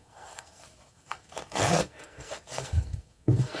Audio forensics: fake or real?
fake